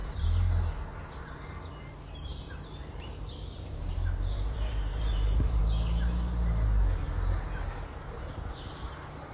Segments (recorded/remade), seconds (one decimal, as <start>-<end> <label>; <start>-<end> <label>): 0.0-2.3 recorded; 2.3-5.6 remade; 5.6-7.8 recorded; 7.8-9.3 remade